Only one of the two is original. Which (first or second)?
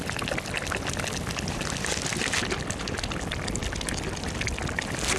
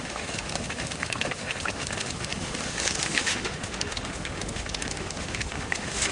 first